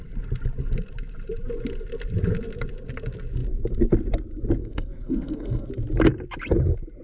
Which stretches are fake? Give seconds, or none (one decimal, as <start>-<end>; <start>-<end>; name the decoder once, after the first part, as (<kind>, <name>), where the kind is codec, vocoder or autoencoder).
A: 4.6-5.7 (codec, SNAC)